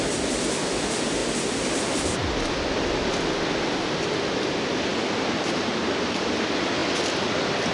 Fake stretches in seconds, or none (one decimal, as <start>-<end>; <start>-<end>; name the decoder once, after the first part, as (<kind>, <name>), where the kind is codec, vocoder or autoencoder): none